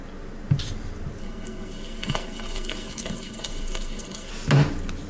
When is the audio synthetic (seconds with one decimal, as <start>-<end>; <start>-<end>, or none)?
1.2-4.3